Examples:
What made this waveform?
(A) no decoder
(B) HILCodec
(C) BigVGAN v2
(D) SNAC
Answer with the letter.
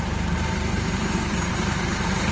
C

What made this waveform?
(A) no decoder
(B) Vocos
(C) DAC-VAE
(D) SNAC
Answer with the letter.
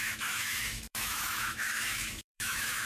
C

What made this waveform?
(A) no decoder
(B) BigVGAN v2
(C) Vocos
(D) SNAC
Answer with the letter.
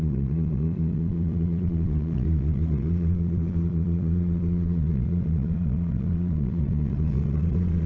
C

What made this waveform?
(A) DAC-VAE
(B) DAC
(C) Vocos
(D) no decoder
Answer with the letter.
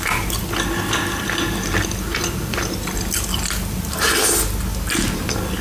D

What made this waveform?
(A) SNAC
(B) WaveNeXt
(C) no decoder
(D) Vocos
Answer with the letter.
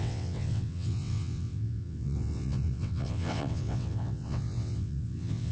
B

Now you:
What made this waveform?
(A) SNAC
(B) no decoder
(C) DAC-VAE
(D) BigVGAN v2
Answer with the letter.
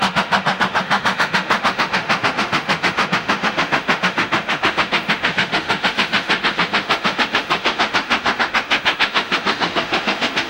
C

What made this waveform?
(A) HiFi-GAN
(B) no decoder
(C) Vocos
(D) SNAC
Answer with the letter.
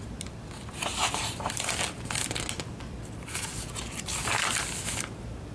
B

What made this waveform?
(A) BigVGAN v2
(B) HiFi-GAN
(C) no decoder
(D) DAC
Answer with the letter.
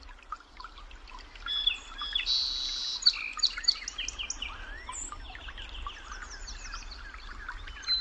C